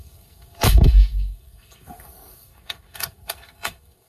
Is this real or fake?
fake